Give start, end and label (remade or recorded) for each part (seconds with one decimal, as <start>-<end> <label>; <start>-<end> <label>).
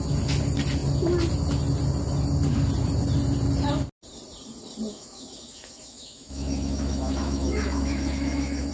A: 0.0-4.9 recorded; 4.9-8.7 remade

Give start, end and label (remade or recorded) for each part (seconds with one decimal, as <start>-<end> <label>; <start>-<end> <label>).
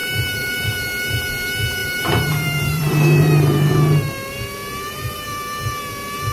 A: 0.0-0.7 remade; 0.7-1.8 recorded; 1.8-3.7 remade; 3.7-4.7 recorded; 4.7-5.8 remade; 5.8-6.3 recorded